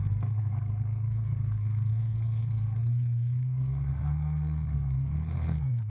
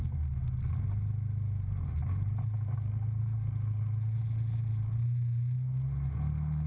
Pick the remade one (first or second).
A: first